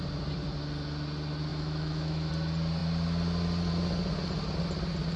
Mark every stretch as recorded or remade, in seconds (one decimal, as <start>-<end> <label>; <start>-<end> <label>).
0.0-1.5 recorded; 1.5-2.3 remade; 2.3-5.2 recorded